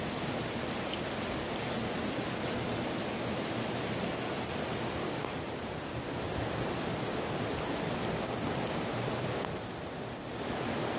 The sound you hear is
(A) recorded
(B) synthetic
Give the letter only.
A